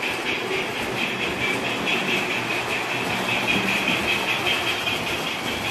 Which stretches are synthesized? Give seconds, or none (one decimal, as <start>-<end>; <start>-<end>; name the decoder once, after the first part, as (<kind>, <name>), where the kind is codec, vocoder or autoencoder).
0.0-5.7 (vocoder, BigVGAN v2)